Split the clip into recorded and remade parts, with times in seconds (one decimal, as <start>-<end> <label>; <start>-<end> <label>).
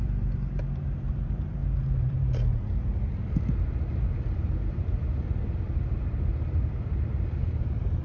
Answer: 0.0-8.0 remade